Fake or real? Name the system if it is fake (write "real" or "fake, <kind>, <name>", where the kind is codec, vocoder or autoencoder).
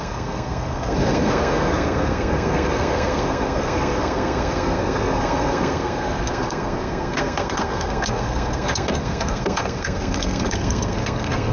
fake, codec, SNAC